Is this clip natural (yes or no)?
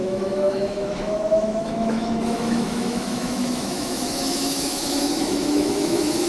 no